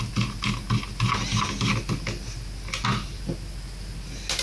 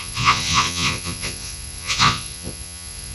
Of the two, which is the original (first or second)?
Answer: first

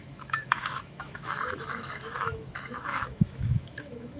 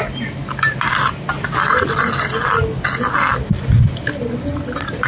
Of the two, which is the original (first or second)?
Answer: second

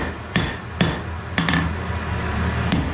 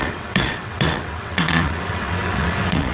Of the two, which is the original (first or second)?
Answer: first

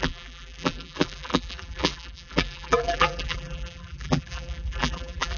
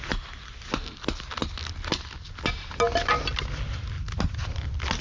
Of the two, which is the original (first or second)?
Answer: second